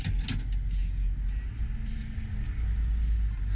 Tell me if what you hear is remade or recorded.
recorded